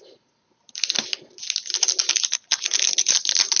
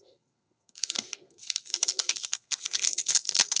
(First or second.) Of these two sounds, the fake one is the second